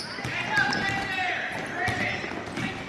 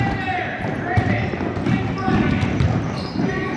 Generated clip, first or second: second